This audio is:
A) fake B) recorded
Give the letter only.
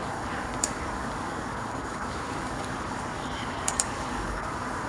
A